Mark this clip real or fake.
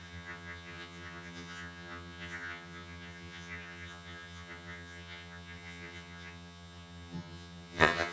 fake